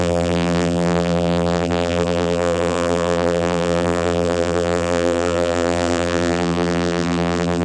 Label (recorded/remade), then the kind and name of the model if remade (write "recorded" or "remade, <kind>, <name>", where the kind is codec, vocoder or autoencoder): remade, vocoder, BigVGAN v2